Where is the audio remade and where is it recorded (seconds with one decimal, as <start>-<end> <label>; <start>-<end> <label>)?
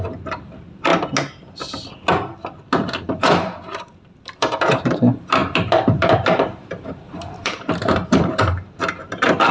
0.0-0.9 remade; 0.9-3.1 recorded; 3.1-9.5 remade